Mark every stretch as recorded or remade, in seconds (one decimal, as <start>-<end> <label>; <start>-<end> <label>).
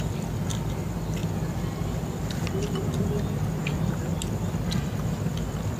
0.0-5.8 recorded